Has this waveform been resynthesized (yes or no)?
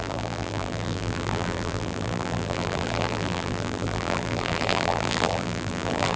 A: yes